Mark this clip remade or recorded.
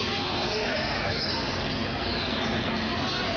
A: remade